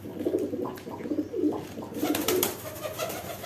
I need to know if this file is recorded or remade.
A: recorded